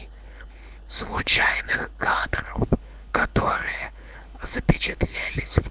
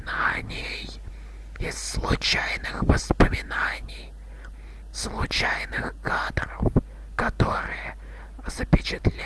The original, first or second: second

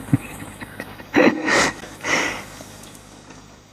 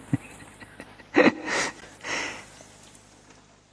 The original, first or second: second